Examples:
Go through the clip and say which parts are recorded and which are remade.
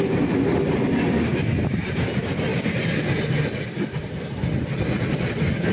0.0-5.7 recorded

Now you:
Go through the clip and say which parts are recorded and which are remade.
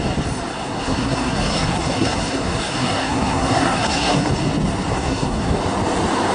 0.0-0.5 recorded; 0.5-4.3 remade; 4.3-4.9 recorded; 4.9-5.6 remade; 5.6-6.3 recorded